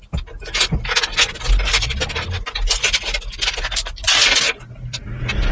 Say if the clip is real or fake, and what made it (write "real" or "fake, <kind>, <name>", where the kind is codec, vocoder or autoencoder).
real